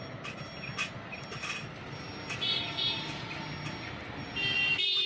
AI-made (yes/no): no